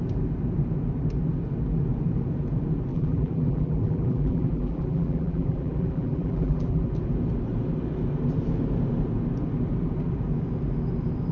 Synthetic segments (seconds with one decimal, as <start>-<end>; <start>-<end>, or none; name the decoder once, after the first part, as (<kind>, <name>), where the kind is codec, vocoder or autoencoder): 2.9-6.8 (vocoder, BigVGAN v2)